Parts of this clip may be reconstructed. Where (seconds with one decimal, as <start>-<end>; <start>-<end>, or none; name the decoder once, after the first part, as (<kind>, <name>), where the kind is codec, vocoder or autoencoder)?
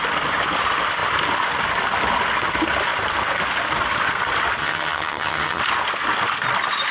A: 4.6-5.6 (vocoder, HiFi-GAN)